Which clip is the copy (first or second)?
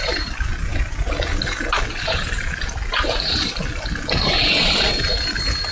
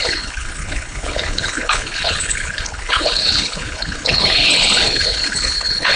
second